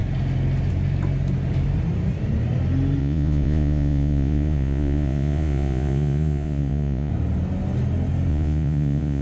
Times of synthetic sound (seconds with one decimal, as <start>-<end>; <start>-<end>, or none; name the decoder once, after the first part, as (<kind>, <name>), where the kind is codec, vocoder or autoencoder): 3.0-7.1 (vocoder, Vocos); 8.3-9.2